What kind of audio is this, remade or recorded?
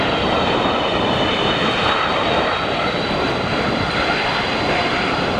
recorded